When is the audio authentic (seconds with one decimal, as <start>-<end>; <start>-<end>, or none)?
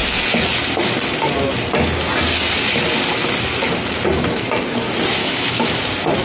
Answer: 0.0-5.2; 5.8-6.2